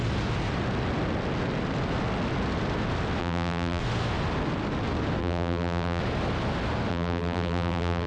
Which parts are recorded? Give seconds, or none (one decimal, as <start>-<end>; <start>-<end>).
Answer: 0.0-3.2; 3.8-5.2; 6.0-6.9